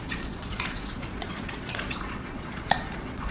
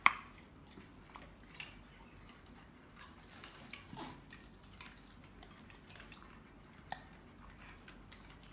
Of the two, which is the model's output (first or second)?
first